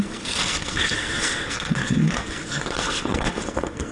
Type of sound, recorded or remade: remade